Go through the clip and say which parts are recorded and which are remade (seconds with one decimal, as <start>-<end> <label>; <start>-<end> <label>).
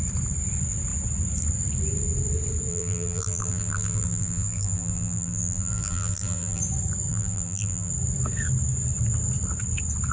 0.0-2.7 recorded; 2.7-6.6 remade; 6.6-7.1 recorded; 7.1-7.9 remade; 7.9-10.1 recorded